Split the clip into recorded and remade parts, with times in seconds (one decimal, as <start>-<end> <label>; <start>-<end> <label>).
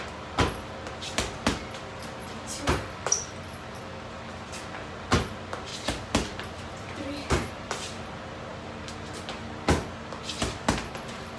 0.0-5.7 recorded; 5.7-8.0 remade; 8.0-11.4 recorded